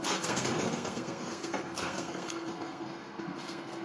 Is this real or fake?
fake